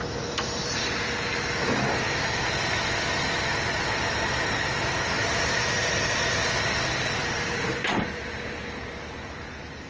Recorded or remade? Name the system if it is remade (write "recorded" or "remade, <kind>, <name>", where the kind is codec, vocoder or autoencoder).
recorded